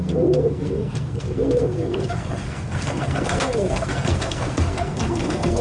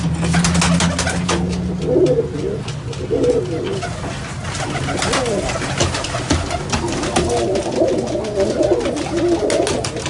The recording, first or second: second